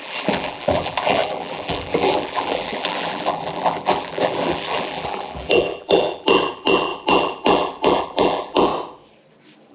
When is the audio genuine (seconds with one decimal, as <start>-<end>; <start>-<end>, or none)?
8.7-9.7